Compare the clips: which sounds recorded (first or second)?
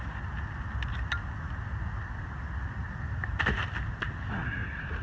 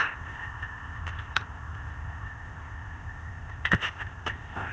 first